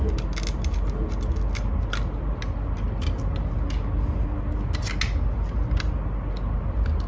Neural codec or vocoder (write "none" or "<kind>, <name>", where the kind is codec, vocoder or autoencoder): none